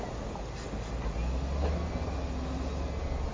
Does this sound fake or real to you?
real